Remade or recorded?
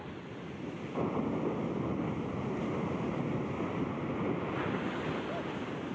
recorded